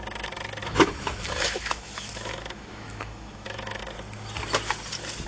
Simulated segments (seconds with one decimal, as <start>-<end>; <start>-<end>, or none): 0.6-3.8